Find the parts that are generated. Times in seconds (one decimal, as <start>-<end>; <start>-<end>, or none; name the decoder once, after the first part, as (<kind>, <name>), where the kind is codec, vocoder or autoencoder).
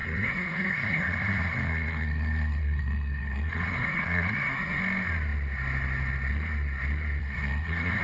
0.0-4.8 (codec, SNAC); 7.2-8.0